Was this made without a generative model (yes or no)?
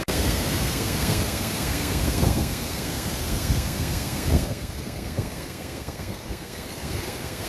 no